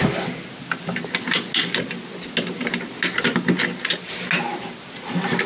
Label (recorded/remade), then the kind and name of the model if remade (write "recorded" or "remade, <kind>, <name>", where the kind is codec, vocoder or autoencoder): recorded